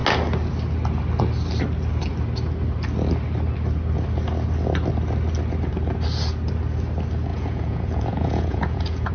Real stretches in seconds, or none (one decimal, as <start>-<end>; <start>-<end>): 0.0-7.3